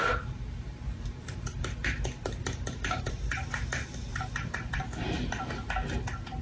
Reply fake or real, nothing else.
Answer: fake